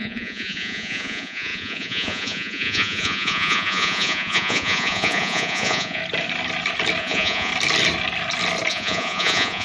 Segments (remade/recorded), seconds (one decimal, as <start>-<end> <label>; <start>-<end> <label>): 0.0-6.0 remade; 6.0-7.0 recorded; 7.0-7.5 remade; 7.5-8.7 recorded; 8.7-9.6 remade